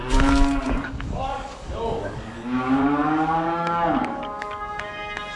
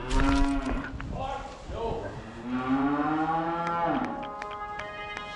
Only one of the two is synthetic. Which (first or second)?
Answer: first